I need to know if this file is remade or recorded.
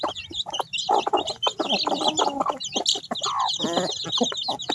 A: recorded